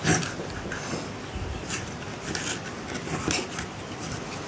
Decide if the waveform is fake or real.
real